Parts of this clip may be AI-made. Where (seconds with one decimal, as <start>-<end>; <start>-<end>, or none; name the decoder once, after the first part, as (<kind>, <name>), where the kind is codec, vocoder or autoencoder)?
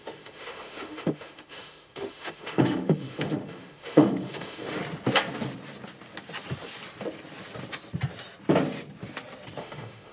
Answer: 0.0-4.8 (autoencoder, DAC-VAE); 9.6-10.1